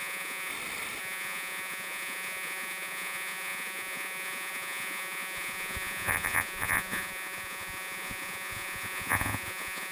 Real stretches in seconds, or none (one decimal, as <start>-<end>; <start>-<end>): 0.5-1.0